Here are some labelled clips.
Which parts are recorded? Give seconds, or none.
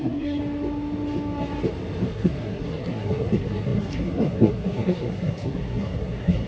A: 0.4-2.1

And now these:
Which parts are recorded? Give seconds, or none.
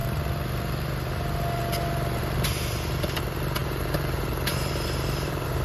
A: 0.0-3.6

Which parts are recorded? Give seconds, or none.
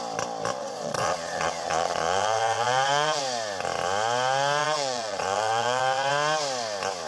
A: 0.0-0.6; 3.2-4.6; 6.1-7.1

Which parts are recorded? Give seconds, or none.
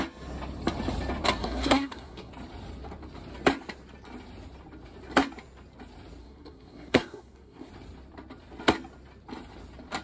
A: 0.0-1.4; 2.3-6.2; 7.7-10.0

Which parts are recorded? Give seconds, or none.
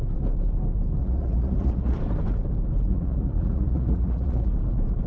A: 0.0-1.0; 2.0-2.9; 4.5-5.1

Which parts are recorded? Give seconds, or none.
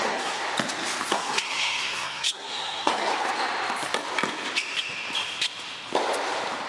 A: 0.4-1.1; 3.1-6.7